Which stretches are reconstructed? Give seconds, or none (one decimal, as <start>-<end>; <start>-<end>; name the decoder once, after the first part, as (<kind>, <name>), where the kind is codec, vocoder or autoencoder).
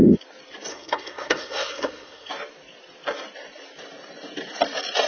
0.7-2.3 (codec, SNAC)